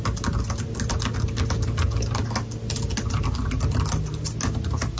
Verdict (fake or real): real